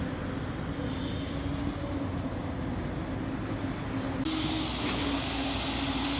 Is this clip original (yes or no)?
yes